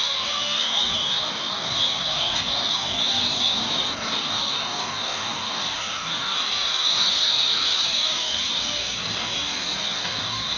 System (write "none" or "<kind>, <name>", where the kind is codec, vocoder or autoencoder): codec, DAC